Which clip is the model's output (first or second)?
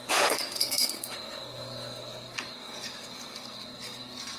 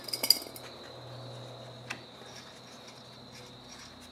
first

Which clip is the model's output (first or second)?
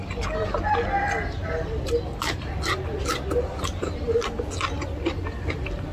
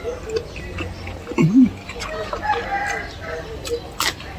second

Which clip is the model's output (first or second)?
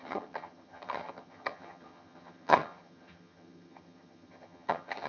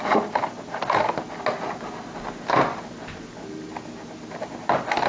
first